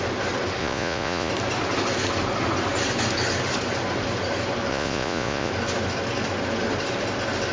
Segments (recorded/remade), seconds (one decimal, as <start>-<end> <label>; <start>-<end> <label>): 0.0-0.6 recorded; 0.6-1.3 remade; 1.3-4.7 recorded; 4.7-5.5 remade; 5.5-7.5 recorded